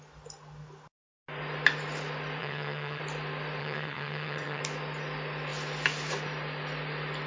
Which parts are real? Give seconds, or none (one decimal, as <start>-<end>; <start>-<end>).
0.0-2.4; 3.0-3.6; 4.6-7.3